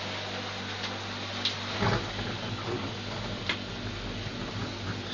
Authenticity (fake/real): real